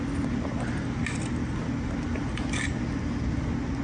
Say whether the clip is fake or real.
real